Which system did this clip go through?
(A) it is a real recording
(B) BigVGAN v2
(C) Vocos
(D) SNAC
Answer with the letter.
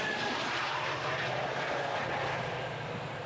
A